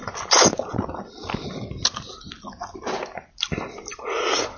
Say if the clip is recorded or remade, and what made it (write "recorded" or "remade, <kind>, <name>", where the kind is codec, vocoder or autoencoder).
recorded